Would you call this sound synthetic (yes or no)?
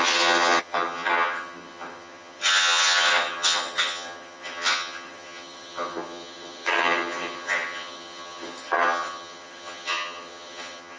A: yes